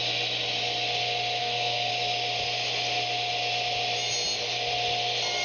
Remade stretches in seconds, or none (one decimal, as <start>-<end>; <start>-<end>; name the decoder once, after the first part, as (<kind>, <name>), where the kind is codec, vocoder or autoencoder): 1.4-1.9 (codec, SNAC)